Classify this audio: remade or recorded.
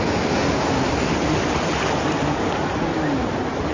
recorded